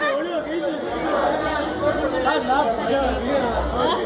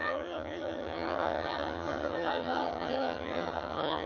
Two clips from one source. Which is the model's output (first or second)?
second